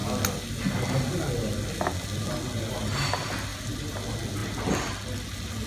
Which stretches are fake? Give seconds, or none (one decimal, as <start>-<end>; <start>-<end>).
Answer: 4.4-4.9